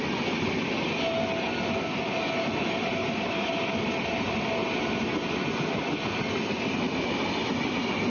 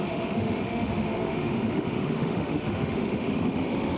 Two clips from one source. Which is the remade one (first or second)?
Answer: second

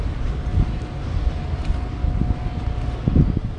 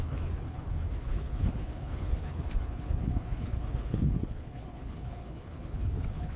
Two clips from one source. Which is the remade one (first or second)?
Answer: second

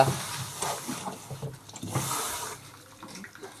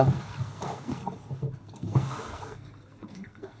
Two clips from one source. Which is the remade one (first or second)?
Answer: second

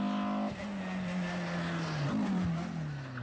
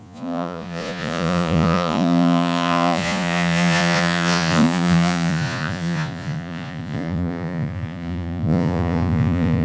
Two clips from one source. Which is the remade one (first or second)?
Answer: second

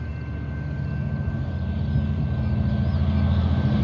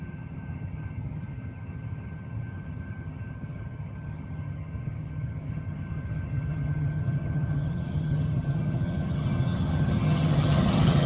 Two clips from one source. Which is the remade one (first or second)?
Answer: second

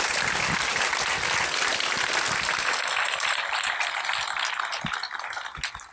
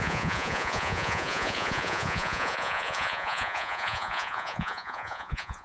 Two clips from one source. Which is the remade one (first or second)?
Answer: second